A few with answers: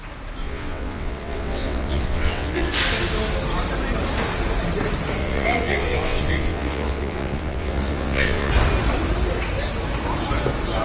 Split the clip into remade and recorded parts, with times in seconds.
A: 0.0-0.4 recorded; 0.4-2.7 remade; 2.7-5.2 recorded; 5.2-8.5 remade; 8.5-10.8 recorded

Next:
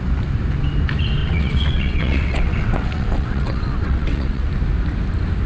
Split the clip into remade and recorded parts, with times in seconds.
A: 0.0-1.2 recorded; 1.2-4.5 remade; 4.5-5.5 recorded

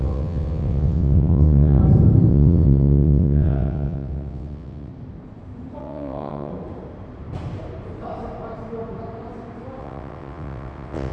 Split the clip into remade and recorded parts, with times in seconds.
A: 0.0-1.8 remade; 1.8-2.3 recorded; 2.3-4.9 remade; 4.9-5.8 recorded; 5.8-6.5 remade; 6.5-9.8 recorded; 9.8-11.1 remade

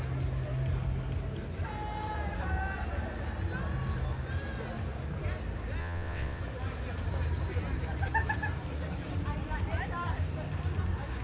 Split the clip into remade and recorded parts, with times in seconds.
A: 0.0-5.8 recorded; 5.8-6.4 remade; 6.4-11.2 recorded

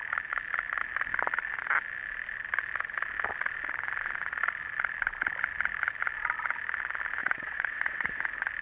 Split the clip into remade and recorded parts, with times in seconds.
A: 0.0-7.2 recorded; 7.2-8.2 remade; 8.2-8.6 recorded

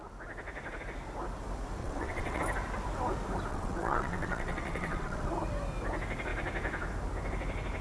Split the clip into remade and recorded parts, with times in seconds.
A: 0.0-1.8 recorded; 1.8-2.4 remade; 2.4-3.5 recorded; 3.5-5.3 remade; 5.3-7.8 recorded

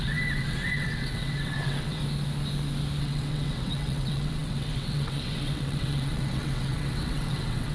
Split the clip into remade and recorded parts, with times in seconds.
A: 0.0-2.0 remade; 2.0-3.0 recorded; 3.0-7.7 remade

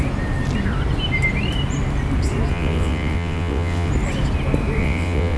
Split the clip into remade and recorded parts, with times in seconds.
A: 0.0-2.5 recorded; 2.5-3.9 remade; 3.9-4.8 recorded; 4.8-5.4 remade